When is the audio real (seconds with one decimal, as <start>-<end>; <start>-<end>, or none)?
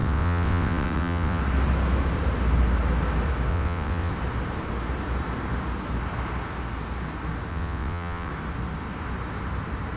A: 1.4-3.5; 4.1-7.5; 8.3-10.0